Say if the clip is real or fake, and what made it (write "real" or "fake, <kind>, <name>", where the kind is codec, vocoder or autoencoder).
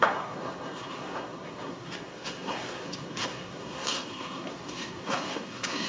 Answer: fake, codec, SNAC